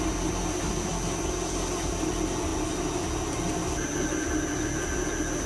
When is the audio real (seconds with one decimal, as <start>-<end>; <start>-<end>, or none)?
0.0-5.5